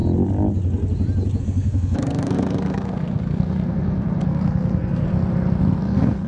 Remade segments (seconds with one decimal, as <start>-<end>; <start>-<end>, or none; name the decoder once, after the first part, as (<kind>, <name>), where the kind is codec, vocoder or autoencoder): 1.4-5.1 (codec, SNAC); 5.8-6.3